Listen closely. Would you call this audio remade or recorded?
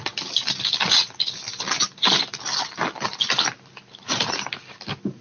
recorded